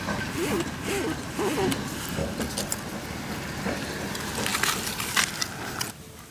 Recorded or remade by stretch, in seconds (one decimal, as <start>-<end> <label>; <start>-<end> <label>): 0.0-6.3 recorded

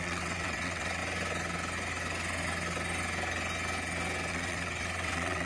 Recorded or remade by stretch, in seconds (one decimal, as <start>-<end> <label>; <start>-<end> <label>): 0.0-1.0 remade; 1.0-4.3 recorded; 4.3-5.5 remade

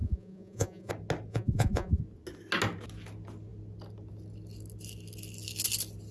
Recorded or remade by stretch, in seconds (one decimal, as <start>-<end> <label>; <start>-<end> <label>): 0.0-0.9 remade; 0.9-1.3 recorded; 1.3-2.0 remade; 2.0-6.1 recorded

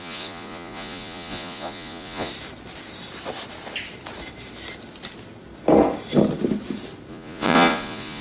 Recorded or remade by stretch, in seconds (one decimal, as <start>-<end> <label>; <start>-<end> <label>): 0.0-2.3 remade; 2.3-7.1 recorded; 7.1-8.2 remade

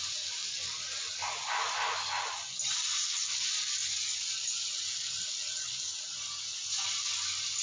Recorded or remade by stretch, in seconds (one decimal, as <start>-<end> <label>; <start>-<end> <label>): 0.0-7.6 recorded

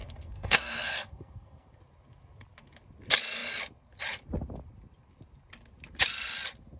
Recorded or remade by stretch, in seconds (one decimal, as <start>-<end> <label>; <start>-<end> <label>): 0.0-1.8 remade; 1.8-6.8 recorded